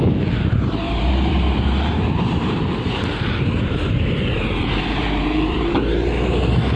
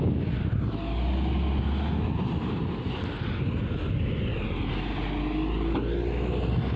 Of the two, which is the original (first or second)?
second